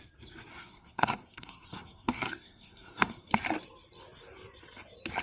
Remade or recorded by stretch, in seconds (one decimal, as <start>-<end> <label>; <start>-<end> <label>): 0.0-0.5 recorded; 0.5-3.3 remade; 3.3-5.2 recorded